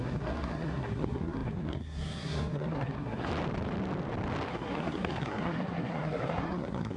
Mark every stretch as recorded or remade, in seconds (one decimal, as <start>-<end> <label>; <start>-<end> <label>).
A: 0.0-3.3 remade; 3.3-4.5 recorded; 4.5-7.0 remade